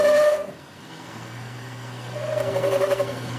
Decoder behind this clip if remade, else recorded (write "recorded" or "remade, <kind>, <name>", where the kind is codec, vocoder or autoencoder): remade, codec, SNAC